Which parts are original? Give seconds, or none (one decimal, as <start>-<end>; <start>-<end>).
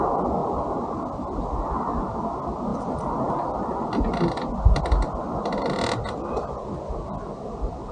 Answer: 0.0-7.9